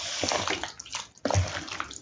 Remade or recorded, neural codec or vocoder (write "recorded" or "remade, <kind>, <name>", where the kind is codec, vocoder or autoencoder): recorded